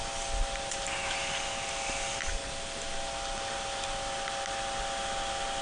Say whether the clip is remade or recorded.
recorded